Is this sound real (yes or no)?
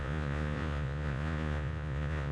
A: no